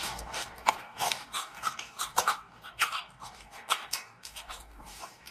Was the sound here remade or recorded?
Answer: remade